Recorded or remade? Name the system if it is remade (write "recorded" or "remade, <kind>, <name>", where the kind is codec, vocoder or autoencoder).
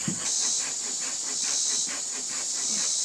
remade, vocoder, BigVGAN v2